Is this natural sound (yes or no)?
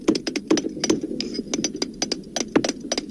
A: yes